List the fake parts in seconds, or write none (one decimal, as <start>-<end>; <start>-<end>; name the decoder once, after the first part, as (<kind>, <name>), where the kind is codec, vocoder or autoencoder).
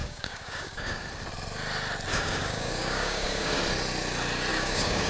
0.0-1.0 (codec, DAC); 2.1-3.6; 4.5-5.1